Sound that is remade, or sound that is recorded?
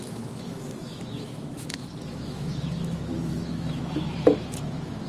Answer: remade